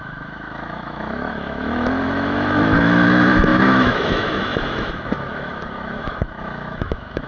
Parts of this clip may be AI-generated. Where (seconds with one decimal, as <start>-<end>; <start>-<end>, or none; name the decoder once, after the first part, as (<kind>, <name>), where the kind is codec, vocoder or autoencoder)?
0.0-7.3 (autoencoder, DAC-VAE)